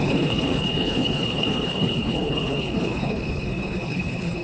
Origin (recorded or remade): remade